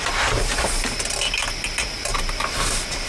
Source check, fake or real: real